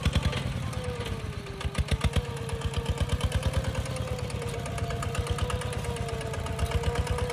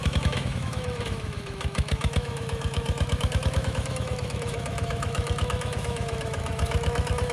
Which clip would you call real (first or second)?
first